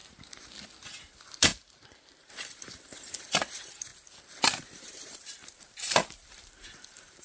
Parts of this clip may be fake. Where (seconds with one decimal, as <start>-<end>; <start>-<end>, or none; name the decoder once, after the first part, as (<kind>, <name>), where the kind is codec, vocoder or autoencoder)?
1.0-3.9 (vocoder, BigVGAN v2); 4.8-7.2